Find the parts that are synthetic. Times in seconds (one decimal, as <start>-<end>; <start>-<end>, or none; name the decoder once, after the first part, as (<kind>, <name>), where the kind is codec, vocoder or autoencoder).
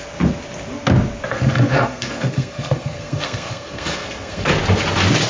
1.3-4.5 (codec, SNAC)